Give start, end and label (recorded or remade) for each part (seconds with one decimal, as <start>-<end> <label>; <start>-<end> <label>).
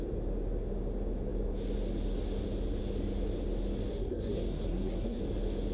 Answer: 0.0-3.9 recorded; 3.9-5.2 remade; 5.2-5.7 recorded